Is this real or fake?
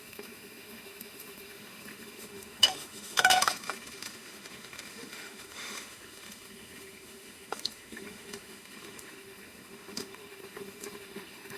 fake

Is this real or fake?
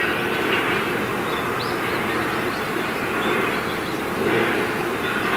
real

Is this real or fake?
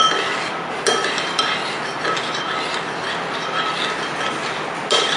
real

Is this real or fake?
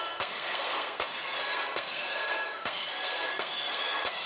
fake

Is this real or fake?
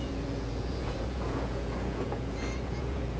fake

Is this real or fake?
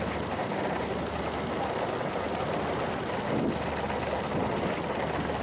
real